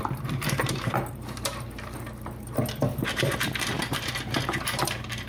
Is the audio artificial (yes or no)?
yes